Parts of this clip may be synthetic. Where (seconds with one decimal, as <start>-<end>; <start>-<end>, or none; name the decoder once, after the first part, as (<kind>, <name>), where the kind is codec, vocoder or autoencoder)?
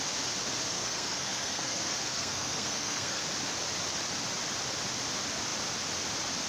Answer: 0.7-3.2 (codec, SNAC)